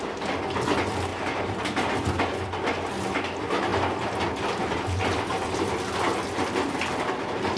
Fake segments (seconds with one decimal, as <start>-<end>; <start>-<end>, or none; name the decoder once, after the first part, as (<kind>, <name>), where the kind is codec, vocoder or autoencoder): none

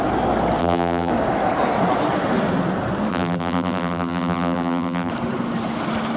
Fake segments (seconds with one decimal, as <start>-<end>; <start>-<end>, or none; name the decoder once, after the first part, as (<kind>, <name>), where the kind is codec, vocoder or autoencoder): 0.6-1.1 (vocoder, BigVGAN v2); 3.1-5.1